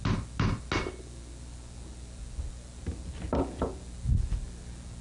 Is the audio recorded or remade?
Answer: recorded